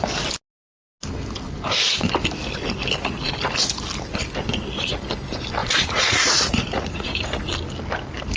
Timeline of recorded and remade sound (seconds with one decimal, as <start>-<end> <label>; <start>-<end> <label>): 0.0-5.6 recorded; 5.6-7.5 remade; 7.5-8.4 recorded